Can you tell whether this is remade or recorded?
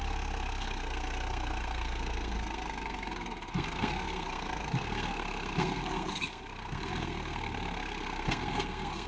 remade